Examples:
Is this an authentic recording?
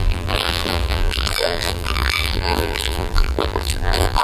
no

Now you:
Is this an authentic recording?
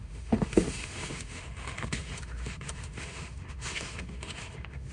no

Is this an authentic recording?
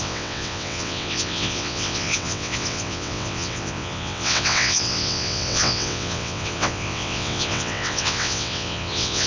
no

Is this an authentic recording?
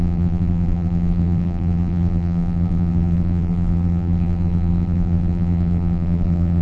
no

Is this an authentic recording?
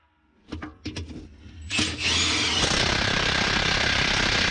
yes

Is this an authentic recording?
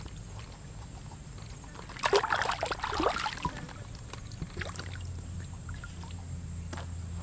yes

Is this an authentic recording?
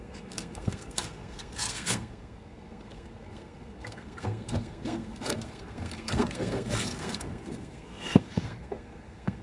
no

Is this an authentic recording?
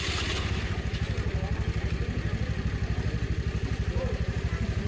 yes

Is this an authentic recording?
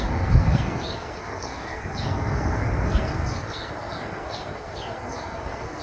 no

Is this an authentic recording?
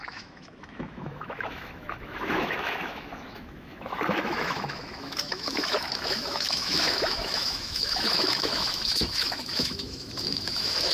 no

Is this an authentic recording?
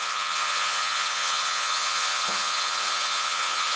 no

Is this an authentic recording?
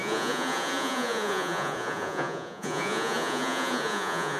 no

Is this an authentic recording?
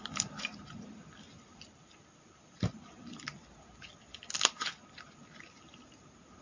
yes